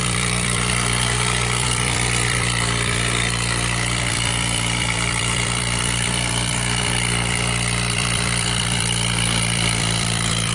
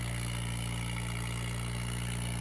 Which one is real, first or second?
second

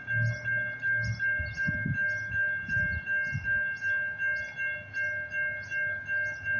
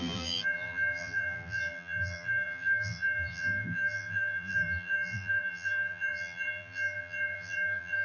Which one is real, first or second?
first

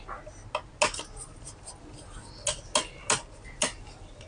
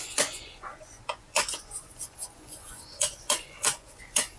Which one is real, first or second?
first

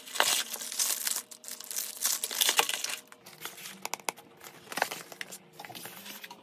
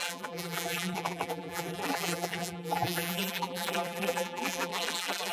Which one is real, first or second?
first